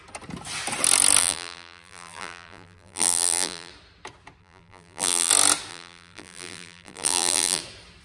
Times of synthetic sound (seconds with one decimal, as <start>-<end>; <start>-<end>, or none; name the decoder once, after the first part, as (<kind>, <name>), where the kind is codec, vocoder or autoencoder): 1.2-3.7 (vocoder, BigVGAN v2); 4.4-5.3; 5.7-7.6